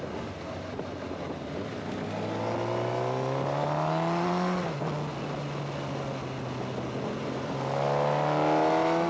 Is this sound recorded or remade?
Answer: recorded